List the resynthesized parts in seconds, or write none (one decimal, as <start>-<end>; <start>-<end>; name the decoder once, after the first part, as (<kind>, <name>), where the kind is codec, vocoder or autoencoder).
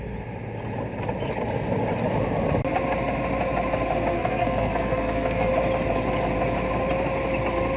4.1-5.5 (codec, SNAC)